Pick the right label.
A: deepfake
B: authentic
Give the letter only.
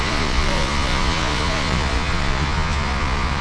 A